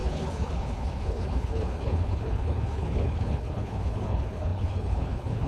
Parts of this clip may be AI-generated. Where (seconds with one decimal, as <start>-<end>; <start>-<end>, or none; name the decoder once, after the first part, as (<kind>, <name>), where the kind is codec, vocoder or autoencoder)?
0.0-5.5 (codec, HILCodec)